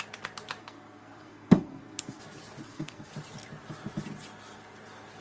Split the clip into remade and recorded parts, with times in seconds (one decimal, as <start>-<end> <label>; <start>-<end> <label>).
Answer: 0.0-0.6 recorded; 0.6-2.2 remade; 2.2-2.6 recorded; 2.6-3.1 remade; 3.1-5.2 recorded